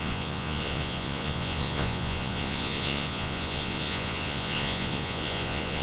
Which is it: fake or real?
fake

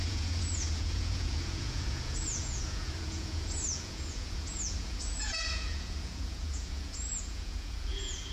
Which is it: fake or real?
fake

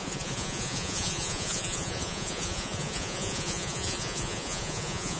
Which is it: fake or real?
fake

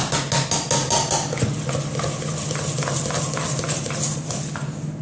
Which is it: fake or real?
real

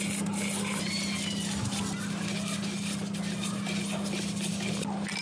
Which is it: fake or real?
real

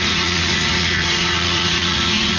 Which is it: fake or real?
fake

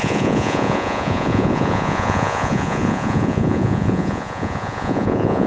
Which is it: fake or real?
fake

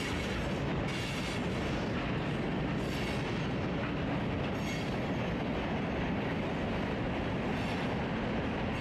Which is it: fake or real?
real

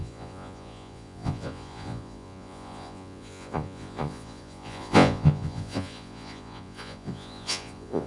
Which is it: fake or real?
fake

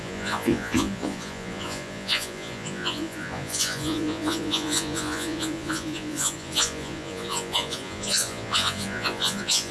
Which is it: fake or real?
fake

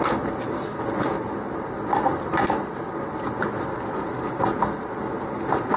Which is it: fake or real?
real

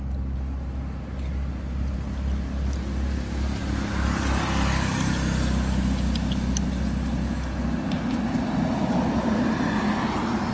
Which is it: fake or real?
real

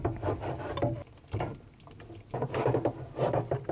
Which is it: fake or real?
real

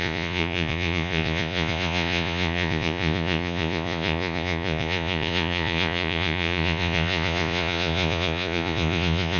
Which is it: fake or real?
fake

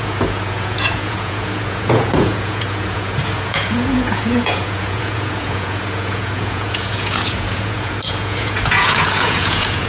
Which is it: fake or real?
fake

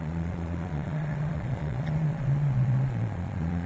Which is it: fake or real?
fake